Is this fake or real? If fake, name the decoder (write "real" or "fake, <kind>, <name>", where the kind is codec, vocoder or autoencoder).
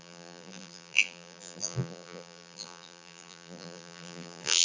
fake, vocoder, BigVGAN v2